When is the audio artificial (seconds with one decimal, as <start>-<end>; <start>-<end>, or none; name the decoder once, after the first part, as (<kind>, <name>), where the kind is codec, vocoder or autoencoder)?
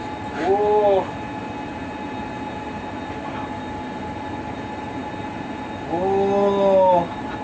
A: none